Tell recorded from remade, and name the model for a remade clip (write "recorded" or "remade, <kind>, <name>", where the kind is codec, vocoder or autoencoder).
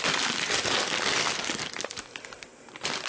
recorded